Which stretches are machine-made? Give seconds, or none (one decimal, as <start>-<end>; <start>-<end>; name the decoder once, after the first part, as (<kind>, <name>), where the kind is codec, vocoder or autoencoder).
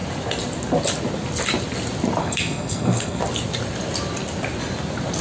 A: 2.2-3.2 (codec, SNAC)